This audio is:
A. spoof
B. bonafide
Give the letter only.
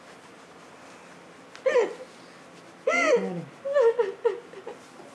B